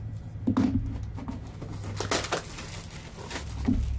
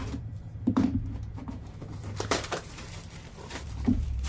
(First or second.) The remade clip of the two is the second